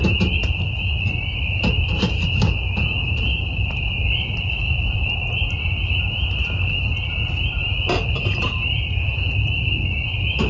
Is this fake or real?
real